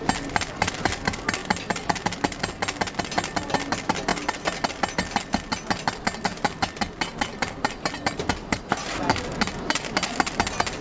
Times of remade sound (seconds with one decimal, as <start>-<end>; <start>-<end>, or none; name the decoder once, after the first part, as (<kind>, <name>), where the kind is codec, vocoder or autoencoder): 1.4-2.0 (vocoder, BigVGAN v2); 6.3-8.7